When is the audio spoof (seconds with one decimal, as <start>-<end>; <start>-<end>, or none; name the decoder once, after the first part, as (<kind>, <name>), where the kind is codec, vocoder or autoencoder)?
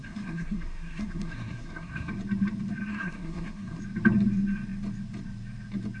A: 0.0-2.1 (codec, SNAC); 2.9-3.8